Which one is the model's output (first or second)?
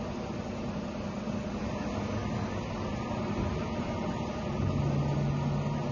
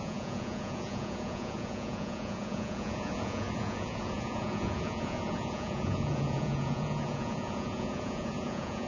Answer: second